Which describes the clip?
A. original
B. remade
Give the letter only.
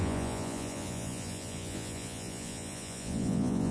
B